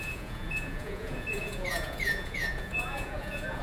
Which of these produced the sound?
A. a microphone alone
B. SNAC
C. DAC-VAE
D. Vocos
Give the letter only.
D